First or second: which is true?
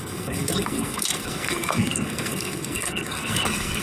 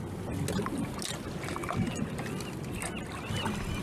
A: second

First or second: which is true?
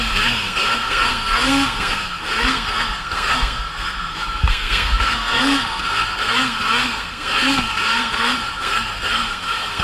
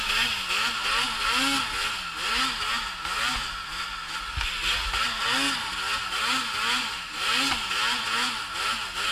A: second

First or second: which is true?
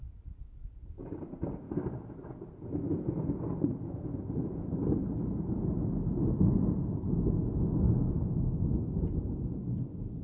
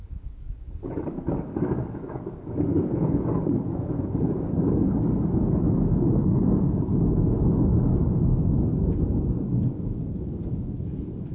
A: first